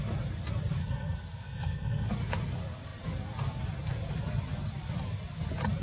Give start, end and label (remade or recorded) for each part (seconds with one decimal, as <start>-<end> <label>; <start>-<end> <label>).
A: 0.0-0.8 recorded; 0.8-2.1 remade; 2.1-5.8 recorded